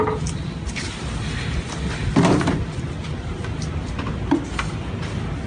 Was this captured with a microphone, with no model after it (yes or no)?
yes